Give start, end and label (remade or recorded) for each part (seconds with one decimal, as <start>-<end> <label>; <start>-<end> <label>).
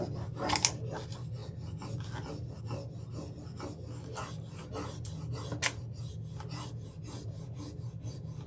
0.0-8.5 recorded